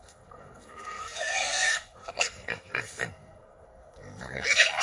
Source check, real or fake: fake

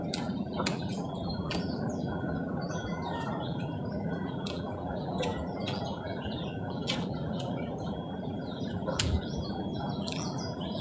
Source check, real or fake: fake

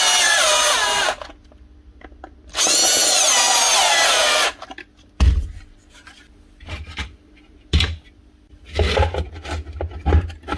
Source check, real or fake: real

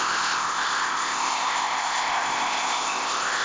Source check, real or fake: fake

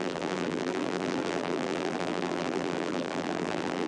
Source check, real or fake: fake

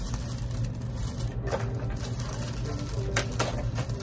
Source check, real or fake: real